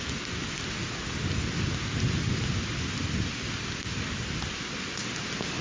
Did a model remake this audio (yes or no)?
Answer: no